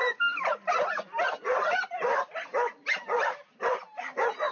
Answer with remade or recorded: recorded